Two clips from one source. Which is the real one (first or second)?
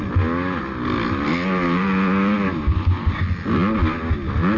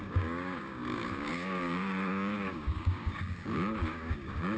first